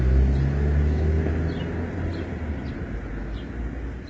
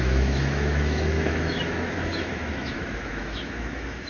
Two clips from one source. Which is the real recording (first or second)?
first